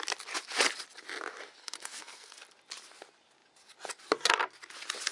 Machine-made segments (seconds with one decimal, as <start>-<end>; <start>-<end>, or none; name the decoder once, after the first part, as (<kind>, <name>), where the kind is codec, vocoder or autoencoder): 1.6-2.4 (codec, SNAC)